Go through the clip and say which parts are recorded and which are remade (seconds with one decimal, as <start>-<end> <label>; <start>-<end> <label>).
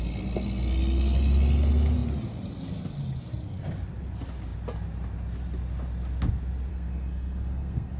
0.0-6.7 recorded; 6.7-8.0 remade